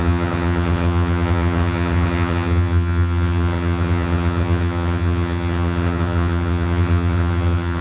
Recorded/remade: remade